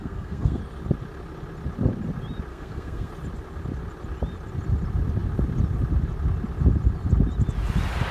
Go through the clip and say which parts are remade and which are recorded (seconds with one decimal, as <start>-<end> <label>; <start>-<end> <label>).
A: 0.0-0.6 remade; 0.6-2.5 recorded; 2.5-3.1 remade; 3.1-8.1 recorded